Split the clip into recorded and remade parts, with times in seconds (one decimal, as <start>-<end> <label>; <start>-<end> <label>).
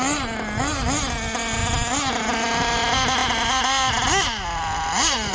0.0-5.3 recorded